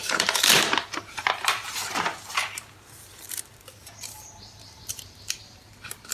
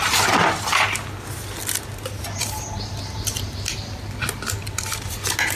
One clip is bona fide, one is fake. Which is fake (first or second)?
first